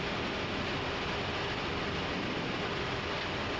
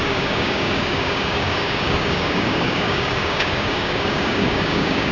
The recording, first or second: first